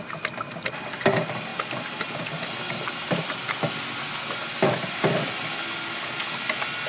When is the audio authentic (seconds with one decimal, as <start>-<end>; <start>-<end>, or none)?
0.0-6.9